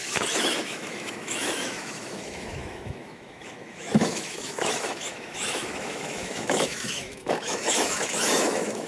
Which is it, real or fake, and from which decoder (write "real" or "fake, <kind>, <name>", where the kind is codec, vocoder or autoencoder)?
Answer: fake, autoencoder, DAC-VAE